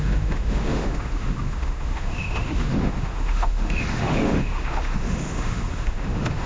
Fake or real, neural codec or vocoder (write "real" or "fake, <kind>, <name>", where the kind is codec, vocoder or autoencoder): fake, autoencoder, DAC-VAE